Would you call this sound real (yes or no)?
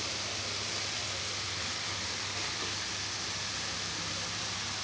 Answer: no